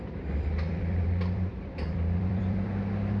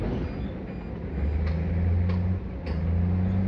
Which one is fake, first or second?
first